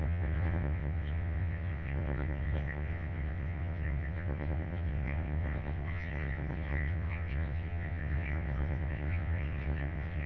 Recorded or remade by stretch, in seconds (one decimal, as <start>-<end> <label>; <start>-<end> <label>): 0.0-10.3 remade